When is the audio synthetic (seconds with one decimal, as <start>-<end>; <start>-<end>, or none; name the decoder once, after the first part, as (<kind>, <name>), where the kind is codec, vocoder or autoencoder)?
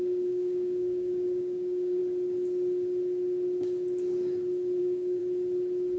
0.0-2.0 (codec, DAC); 4.8-5.2